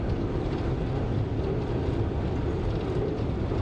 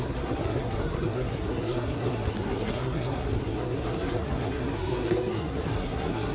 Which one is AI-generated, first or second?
second